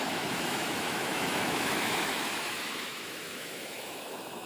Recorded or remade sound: remade